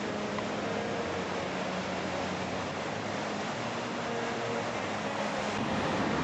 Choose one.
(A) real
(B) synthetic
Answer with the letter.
A